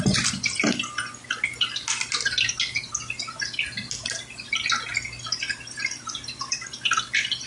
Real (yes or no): yes